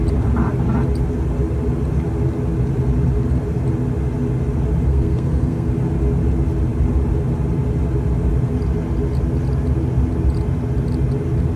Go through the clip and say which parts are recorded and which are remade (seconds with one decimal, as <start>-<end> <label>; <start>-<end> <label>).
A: 0.0-4.9 recorded; 4.9-5.7 remade; 5.7-11.6 recorded